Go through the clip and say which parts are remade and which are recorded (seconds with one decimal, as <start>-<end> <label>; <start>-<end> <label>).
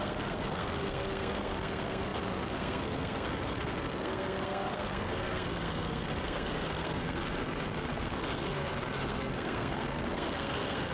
0.0-10.9 remade